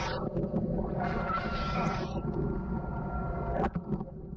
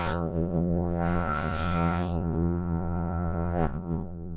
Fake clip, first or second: second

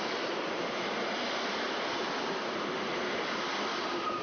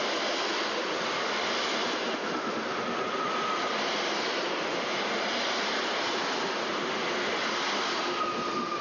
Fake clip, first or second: first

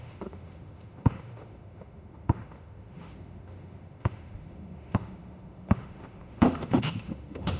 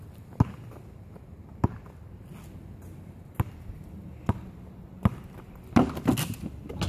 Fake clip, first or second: first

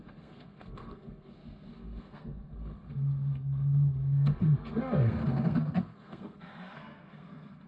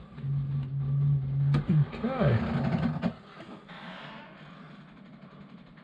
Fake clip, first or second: first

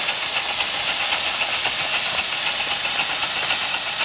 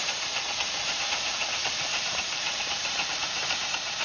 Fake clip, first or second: second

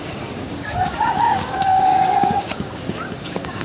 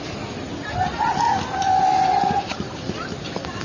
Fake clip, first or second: first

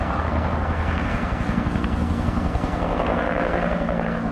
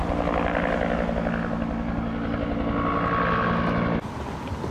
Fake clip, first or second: first